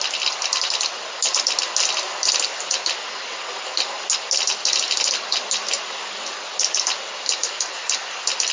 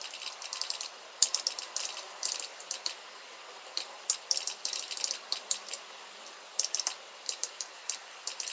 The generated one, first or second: second